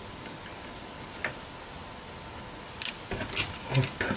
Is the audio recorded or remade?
recorded